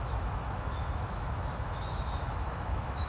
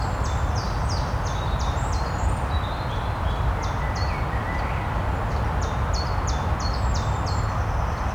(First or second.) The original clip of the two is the second